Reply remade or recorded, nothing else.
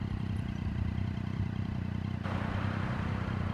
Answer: remade